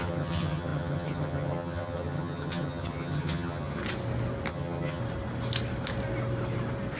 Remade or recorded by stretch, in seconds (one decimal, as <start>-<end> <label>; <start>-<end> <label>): 0.0-3.8 remade; 3.8-4.5 recorded; 4.5-5.0 remade; 5.0-7.0 recorded